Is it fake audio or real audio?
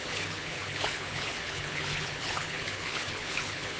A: fake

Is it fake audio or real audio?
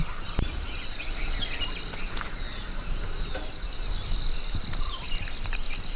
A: real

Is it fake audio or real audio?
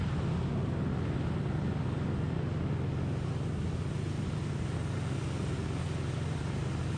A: real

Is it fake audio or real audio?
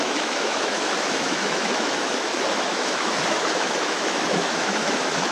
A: fake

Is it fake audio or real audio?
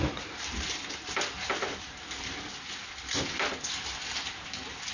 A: real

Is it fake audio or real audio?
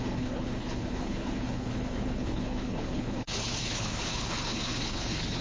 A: fake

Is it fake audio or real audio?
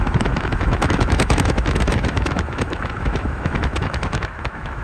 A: fake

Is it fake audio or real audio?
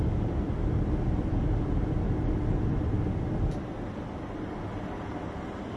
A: real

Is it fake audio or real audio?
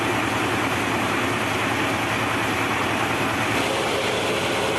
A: real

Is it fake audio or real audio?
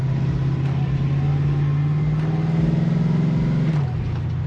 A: real